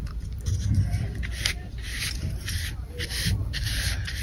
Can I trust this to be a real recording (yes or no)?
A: no